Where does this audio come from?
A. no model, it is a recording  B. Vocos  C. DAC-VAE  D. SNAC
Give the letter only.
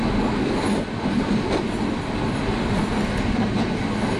A